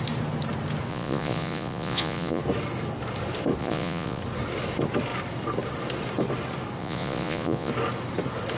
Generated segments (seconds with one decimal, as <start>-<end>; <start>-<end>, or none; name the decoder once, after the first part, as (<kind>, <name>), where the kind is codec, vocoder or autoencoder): 0.9-2.4 (vocoder, Vocos); 3.6-4.2; 6.8-7.7